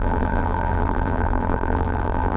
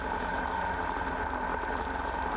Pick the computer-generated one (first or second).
first